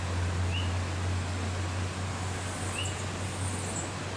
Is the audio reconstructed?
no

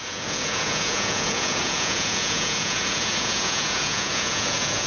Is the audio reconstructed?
yes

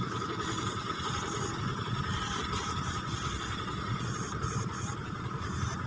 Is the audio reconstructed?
yes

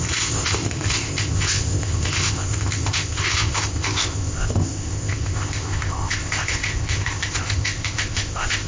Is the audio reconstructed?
yes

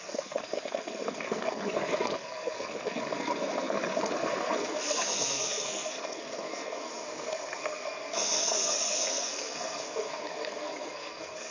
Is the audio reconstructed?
yes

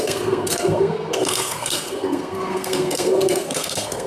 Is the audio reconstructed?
yes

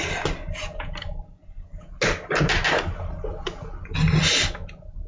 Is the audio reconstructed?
no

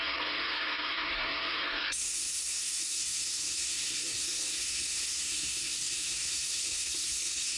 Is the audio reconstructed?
yes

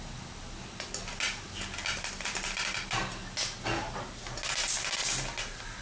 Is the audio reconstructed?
no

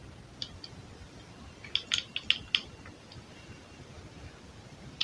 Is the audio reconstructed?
no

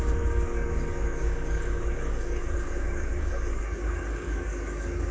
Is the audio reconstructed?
yes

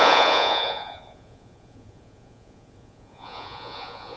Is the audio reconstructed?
yes